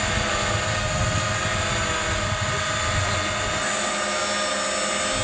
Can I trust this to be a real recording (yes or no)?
yes